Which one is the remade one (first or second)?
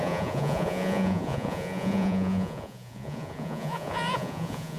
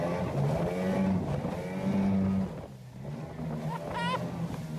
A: first